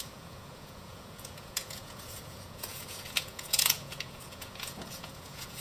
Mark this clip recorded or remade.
remade